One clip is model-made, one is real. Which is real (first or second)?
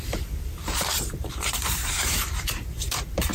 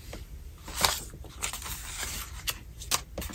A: second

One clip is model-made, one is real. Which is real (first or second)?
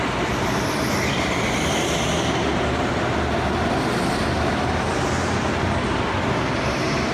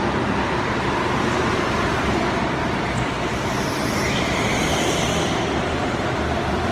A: first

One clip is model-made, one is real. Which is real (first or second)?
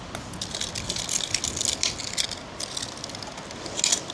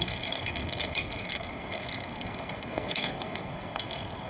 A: first